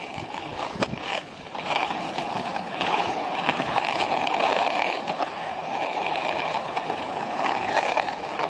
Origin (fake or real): fake